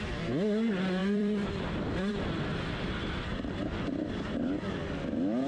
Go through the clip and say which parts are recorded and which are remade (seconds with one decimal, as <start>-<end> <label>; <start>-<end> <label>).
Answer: 0.0-1.0 recorded; 1.0-1.7 remade; 1.7-3.6 recorded; 3.6-4.7 remade; 4.7-5.5 recorded